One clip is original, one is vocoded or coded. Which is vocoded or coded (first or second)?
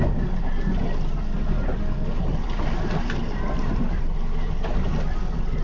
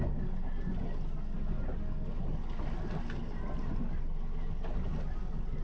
first